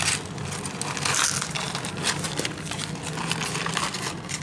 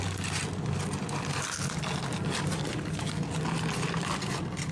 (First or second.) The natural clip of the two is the first